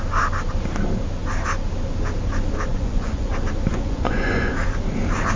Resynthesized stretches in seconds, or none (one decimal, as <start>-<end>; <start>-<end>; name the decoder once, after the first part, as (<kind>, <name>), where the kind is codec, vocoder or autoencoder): 2.7-3.3 (vocoder, Vocos); 3.7-4.5